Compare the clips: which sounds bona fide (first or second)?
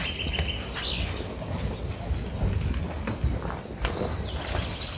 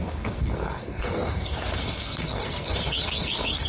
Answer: first